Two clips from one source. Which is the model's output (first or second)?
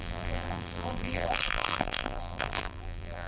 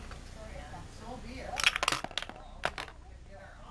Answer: first